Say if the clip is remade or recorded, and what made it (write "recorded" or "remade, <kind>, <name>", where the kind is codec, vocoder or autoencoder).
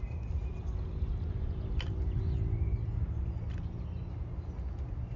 recorded